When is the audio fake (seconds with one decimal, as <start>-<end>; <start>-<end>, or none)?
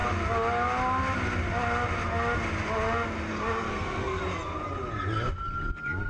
3.7-4.2